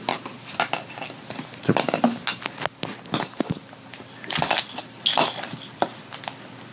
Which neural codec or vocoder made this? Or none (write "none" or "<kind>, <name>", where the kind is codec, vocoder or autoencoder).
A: none